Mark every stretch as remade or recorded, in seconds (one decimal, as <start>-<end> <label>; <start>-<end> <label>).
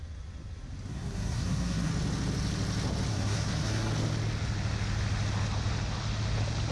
0.0-0.9 recorded; 0.9-1.9 remade; 1.9-3.1 recorded; 3.1-3.9 remade; 3.9-6.7 recorded